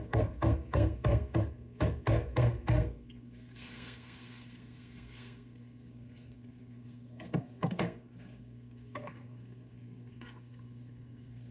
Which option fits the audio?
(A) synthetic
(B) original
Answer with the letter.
A